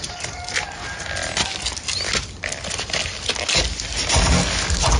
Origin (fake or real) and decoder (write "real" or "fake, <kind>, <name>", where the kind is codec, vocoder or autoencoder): real